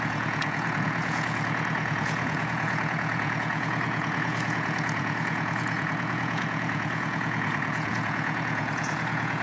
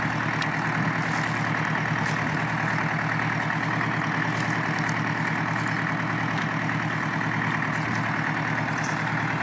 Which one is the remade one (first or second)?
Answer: first